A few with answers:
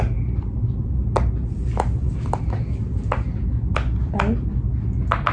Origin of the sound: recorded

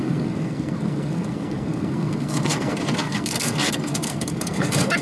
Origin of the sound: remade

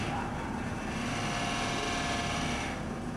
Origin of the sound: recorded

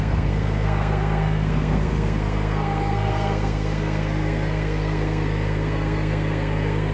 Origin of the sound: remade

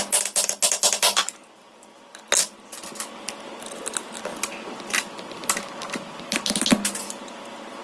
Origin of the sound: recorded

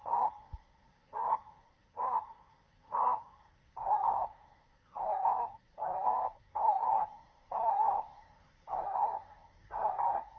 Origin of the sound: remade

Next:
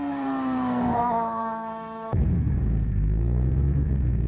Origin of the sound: remade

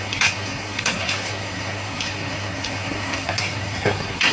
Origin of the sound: remade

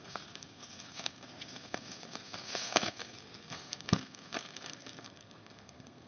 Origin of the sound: remade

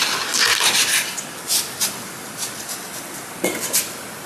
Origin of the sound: recorded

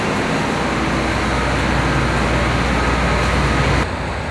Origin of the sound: recorded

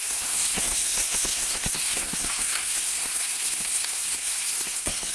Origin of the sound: remade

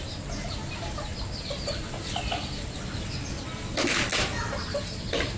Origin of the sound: recorded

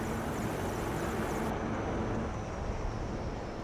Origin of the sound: recorded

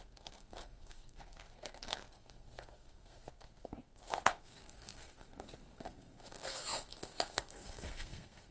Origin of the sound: remade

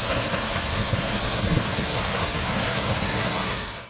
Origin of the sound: remade